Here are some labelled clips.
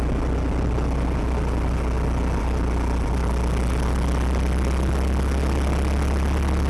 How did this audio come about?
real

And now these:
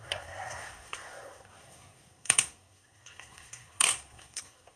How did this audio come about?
fake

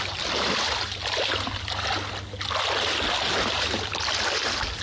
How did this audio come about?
real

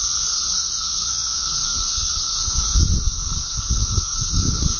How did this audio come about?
fake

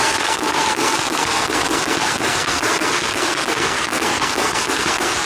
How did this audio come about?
fake